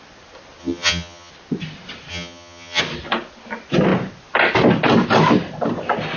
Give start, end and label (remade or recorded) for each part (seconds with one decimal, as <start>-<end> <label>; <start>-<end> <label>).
0.0-0.6 recorded; 0.6-1.3 remade; 1.3-2.1 recorded; 2.1-2.8 remade; 2.8-6.2 recorded